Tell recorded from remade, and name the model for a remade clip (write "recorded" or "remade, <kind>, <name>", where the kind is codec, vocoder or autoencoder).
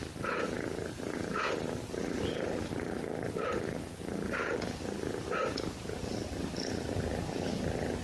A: recorded